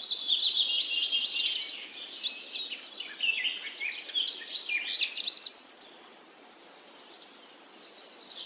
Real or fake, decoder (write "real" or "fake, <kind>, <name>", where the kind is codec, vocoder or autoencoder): real